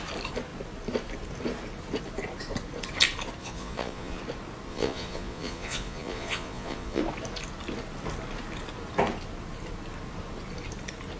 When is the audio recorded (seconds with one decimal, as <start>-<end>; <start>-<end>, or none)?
0.0-3.4; 4.2-4.7; 7.0-11.2